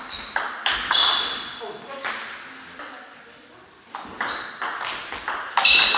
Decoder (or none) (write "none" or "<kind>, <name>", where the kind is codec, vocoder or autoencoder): none